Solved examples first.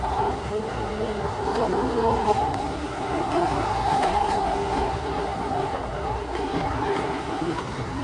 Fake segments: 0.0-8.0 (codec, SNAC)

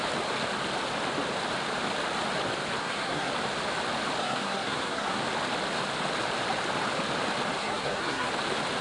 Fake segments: 2.8-3.3 (codec, SNAC); 4.2-5.2; 7.6-8.3

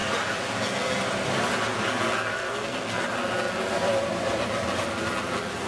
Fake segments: 2.3-3.0 (codec, SNAC)

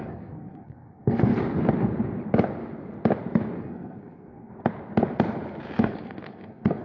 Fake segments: 0.0-1.3 (codec, SNAC); 3.6-4.5; 5.8-6.8

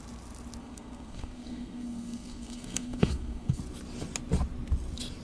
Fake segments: 0.6-3.6 (codec, SNAC)

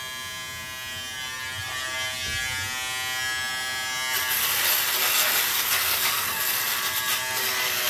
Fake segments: 5.5-6.4 (codec, SNAC)

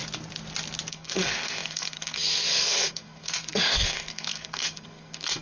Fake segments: 0.9-5.4 (codec, SNAC)